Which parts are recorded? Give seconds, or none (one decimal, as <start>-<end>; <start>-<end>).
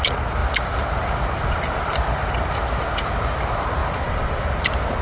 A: 0.0-0.4; 3.4-5.0